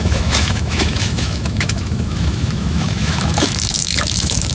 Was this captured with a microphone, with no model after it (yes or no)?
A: no